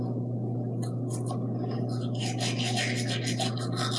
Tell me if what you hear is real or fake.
real